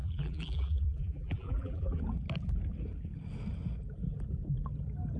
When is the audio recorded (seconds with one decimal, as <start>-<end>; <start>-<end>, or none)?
2.0-5.2